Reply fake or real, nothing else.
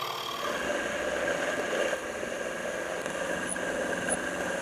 real